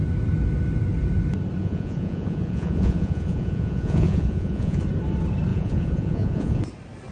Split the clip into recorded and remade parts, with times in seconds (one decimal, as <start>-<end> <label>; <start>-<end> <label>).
0.0-1.6 recorded; 1.6-4.8 remade; 4.8-5.5 recorded; 5.5-6.6 remade; 6.6-7.1 recorded

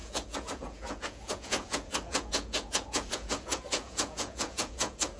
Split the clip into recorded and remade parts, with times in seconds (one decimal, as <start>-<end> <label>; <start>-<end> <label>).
0.0-5.2 remade

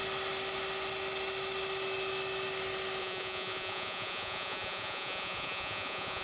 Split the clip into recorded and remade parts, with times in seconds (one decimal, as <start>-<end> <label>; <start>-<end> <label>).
0.0-3.0 recorded; 3.0-6.2 remade

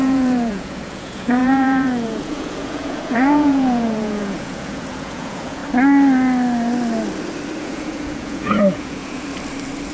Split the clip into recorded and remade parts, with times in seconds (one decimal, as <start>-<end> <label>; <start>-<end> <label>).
0.0-5.6 remade; 5.6-7.6 recorded; 7.6-9.3 remade; 9.3-9.9 recorded

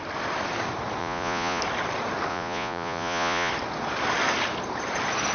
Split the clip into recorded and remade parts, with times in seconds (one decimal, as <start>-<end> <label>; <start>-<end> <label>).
0.0-1.0 recorded; 1.0-1.6 remade; 1.6-2.3 recorded; 2.3-3.5 remade; 3.5-5.3 recorded

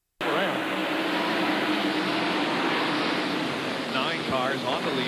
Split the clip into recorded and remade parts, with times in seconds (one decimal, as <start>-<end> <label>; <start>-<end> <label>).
0.0-5.1 recorded

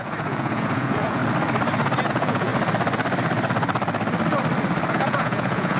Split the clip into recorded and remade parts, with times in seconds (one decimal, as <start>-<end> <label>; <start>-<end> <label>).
0.0-1.2 remade; 1.2-2.1 recorded; 2.1-2.5 remade; 2.5-4.9 recorded; 4.9-5.8 remade

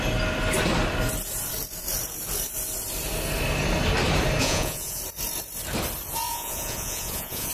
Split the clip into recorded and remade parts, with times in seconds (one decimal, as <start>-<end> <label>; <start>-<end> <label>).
0.0-4.4 recorded; 4.4-5.0 remade; 5.0-6.3 recorded; 6.3-7.5 remade